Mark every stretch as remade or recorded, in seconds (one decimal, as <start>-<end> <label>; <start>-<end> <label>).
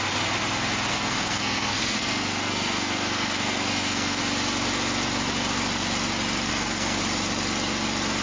0.0-0.9 recorded; 0.9-4.2 remade; 4.2-6.5 recorded; 6.5-7.0 remade; 7.0-8.2 recorded